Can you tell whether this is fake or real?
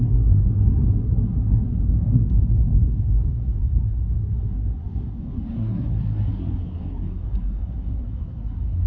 fake